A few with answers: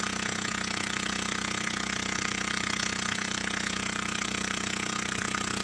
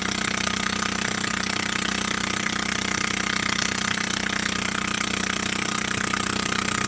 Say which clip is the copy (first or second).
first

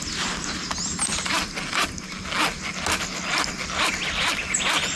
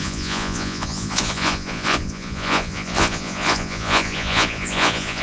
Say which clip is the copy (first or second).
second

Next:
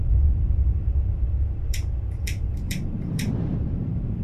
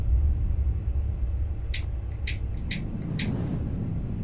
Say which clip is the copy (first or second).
first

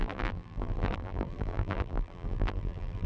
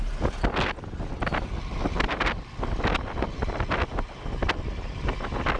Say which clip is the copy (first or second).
first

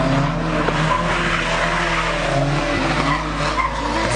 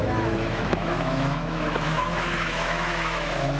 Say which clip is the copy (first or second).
second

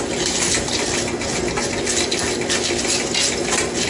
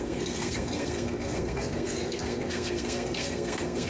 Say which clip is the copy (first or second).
second